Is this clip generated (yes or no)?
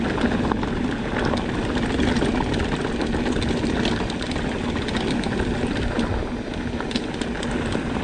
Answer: no